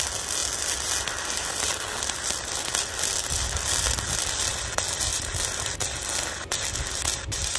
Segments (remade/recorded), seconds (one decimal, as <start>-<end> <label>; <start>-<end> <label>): 0.0-7.6 recorded